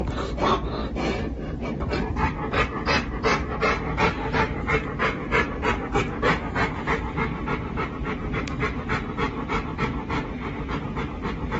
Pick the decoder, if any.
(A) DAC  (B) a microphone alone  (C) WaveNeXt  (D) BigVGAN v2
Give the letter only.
B